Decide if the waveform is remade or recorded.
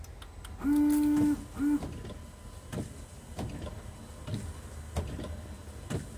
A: recorded